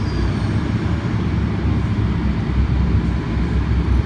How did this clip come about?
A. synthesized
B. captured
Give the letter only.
B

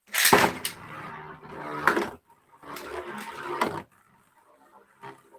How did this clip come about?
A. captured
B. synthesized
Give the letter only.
A